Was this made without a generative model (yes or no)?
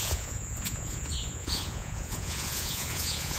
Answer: no